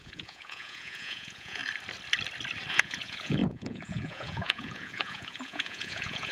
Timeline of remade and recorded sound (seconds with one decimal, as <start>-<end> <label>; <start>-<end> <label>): 0.0-1.6 remade; 1.6-2.7 recorded; 2.7-6.3 remade